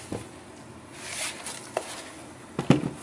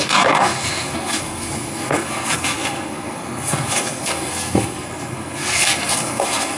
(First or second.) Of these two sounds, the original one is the first